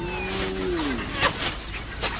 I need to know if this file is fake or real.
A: real